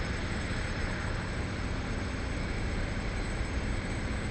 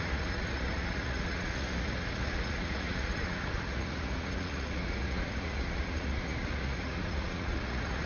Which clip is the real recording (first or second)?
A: first